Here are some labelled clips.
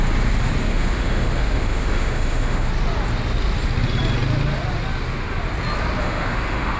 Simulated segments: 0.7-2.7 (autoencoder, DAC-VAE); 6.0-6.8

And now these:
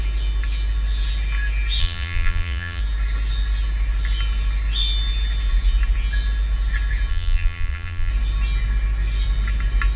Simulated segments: 1.8-2.8 (vocoder, BigVGAN v2); 7.1-8.1

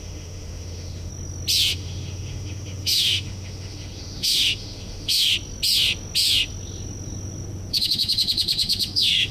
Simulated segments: 0.0-1.1 (autoencoder, DAC-VAE); 1.7-5.3; 7.7-9.3

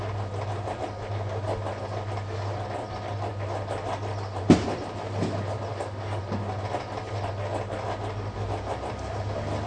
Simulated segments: 5.7-6.2 (codec, DAC)